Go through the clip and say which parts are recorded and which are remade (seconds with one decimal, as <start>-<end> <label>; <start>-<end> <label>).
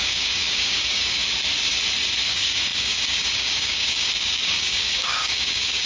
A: 0.0-1.2 remade; 1.2-2.3 recorded; 2.3-5.9 remade